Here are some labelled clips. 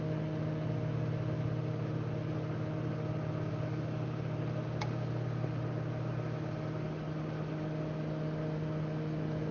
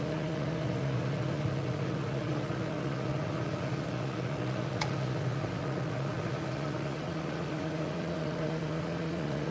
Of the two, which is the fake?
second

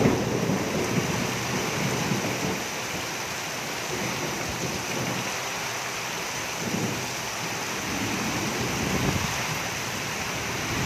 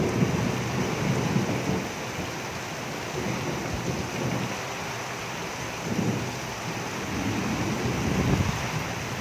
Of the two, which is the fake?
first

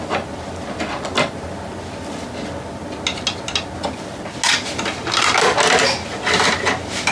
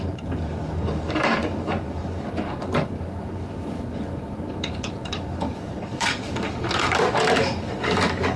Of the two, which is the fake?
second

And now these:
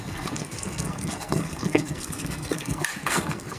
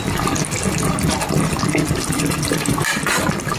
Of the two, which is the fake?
first